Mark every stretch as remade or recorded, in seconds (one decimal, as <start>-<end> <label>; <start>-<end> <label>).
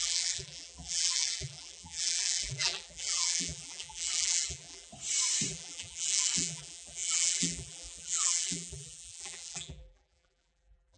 0.0-4.9 remade; 4.9-5.5 recorded; 5.5-11.0 remade